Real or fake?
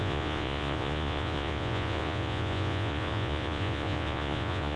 fake